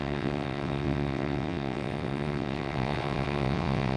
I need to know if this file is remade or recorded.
remade